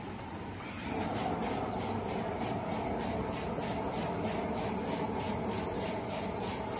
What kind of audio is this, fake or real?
real